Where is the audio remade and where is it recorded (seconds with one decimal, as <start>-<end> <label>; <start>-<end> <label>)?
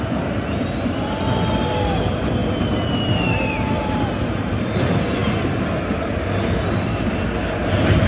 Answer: 0.0-8.1 recorded